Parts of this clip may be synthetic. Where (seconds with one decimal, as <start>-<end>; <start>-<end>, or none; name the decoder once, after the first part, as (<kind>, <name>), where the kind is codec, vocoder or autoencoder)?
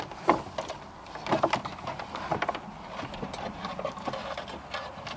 none